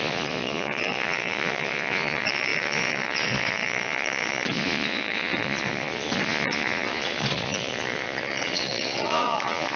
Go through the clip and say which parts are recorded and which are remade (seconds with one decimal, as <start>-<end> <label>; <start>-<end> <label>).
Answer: 0.0-9.8 remade